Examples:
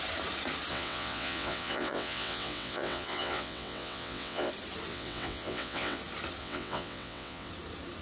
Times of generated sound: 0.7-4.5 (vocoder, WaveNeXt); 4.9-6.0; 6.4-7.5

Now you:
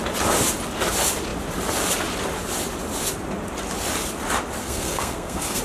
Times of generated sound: 4.6-5.6 (codec, SNAC)

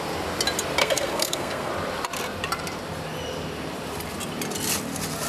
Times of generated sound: 0.8-1.7 (codec, SNAC)

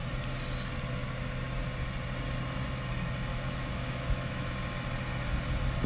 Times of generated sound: 3.3-4.5 (autoencoder, DAC-VAE)

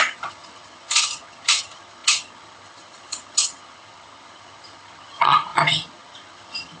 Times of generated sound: 0.0-6.8 (vocoder, HiFi-GAN)

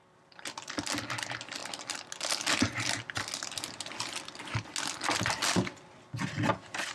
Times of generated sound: none